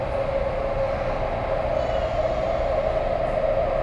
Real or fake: real